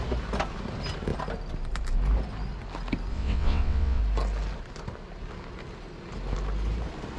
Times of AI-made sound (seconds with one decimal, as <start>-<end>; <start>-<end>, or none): 3.1-4.0